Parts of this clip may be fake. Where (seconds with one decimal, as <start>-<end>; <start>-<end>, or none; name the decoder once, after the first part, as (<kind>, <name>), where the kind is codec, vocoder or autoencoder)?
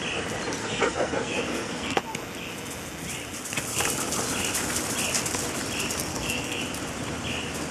0.6-2.0 (codec, SNAC); 6.1-6.6